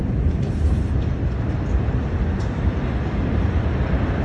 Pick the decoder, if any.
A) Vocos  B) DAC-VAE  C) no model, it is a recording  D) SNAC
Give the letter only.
C